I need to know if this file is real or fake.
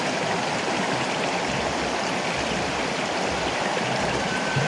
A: real